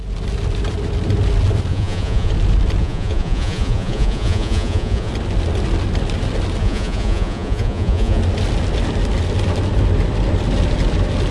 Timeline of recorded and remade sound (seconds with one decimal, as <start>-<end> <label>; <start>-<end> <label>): 0.0-1.7 recorded; 1.7-2.3 remade; 2.3-2.8 recorded; 2.8-5.1 remade; 5.1-6.6 recorded; 6.6-8.2 remade; 8.2-11.3 recorded